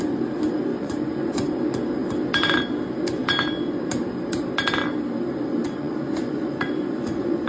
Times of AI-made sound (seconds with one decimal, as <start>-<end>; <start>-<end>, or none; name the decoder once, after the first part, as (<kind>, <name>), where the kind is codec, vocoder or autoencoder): 0.7-1.5 (vocoder, Vocos); 5.6-7.5